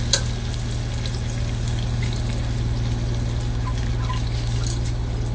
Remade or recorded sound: recorded